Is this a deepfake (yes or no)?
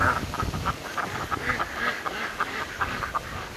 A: yes